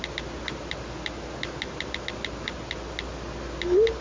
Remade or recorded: recorded